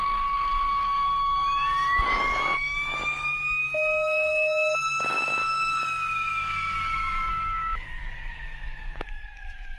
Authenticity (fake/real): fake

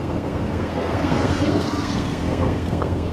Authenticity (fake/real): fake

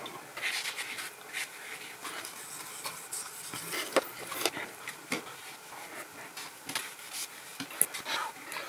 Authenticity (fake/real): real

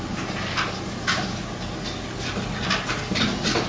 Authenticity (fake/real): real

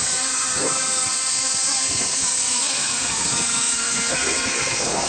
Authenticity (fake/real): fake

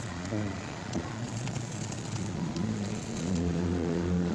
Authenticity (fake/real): fake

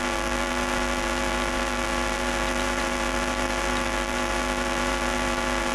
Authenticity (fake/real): fake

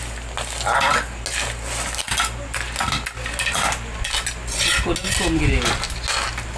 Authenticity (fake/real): real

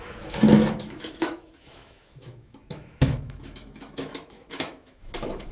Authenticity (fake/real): fake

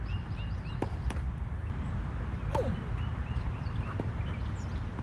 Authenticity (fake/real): real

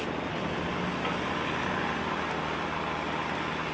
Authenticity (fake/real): real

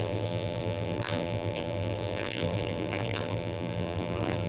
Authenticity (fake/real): fake